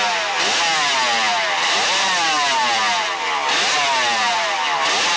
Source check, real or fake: fake